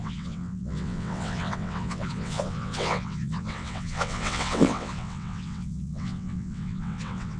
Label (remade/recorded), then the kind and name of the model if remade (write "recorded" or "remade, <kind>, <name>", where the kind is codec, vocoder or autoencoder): remade, vocoder, WaveNeXt